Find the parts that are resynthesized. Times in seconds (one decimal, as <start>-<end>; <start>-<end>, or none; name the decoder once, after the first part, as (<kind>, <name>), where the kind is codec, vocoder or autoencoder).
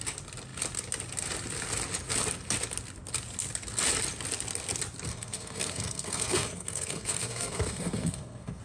5.1-8.6 (codec, SNAC)